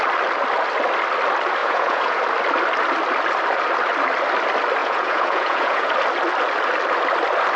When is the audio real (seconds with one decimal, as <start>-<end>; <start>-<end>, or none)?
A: 0.0-1.6; 2.2-4.8; 5.9-7.6